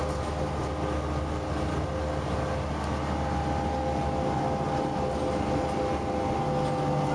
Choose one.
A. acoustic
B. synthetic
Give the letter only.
A